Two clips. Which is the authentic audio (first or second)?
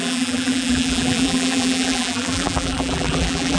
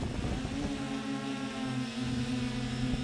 second